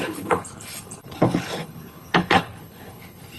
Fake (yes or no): yes